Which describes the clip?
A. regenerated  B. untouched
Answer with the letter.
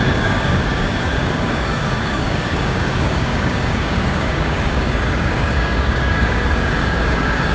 A